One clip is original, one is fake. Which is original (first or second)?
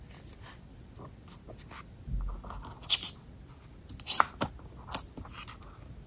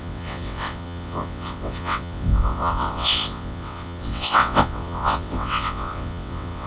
first